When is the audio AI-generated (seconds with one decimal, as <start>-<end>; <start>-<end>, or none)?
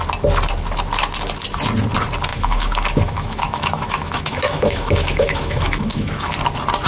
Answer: 2.3-6.3